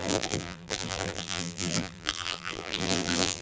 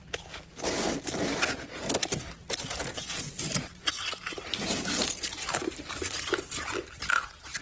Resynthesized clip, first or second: first